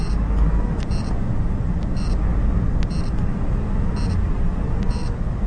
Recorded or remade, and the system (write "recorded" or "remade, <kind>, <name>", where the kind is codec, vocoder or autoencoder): recorded